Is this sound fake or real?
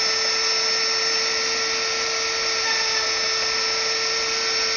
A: real